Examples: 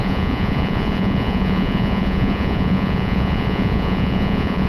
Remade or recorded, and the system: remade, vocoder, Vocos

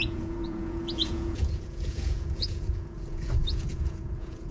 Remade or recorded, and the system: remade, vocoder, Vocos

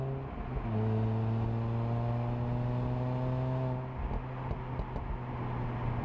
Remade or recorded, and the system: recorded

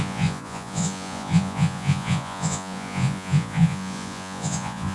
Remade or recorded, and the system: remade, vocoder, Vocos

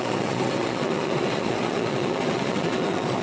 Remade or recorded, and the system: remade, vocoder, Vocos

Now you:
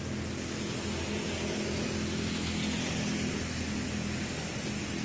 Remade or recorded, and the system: recorded